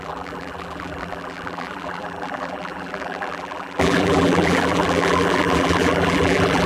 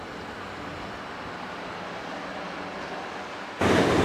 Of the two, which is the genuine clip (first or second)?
second